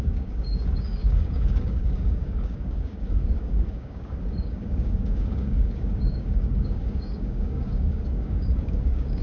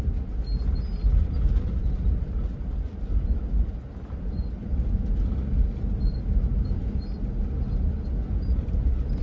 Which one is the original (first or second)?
second